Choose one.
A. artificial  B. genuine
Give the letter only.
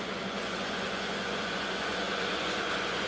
A